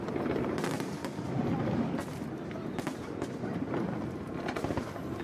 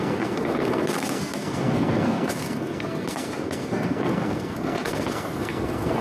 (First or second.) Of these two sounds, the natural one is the first